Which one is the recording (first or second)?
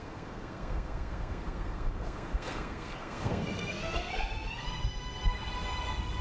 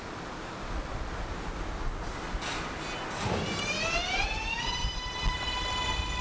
second